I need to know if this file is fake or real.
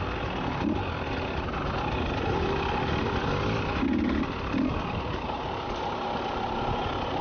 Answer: real